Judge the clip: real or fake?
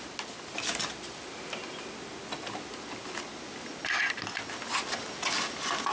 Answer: real